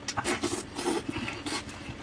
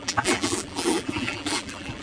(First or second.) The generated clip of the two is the second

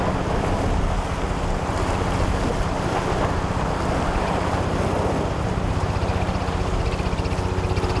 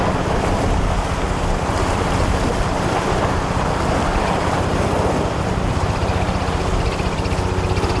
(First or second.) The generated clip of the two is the second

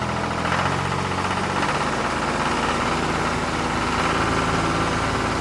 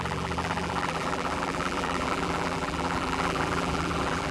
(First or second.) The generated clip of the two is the second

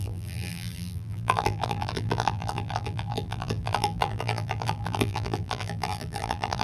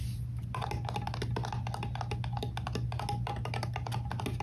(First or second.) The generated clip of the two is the first